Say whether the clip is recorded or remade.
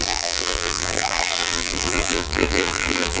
remade